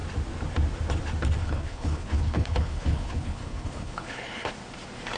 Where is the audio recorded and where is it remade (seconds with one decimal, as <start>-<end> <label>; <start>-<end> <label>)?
0.0-1.4 recorded; 1.4-4.5 remade; 4.5-5.2 recorded